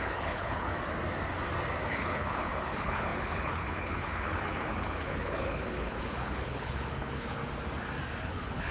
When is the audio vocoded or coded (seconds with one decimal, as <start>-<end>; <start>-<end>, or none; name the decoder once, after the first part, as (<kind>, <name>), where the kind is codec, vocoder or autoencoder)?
0.0-0.7 (codec, HILCodec); 1.9-7.4; 8.2-8.7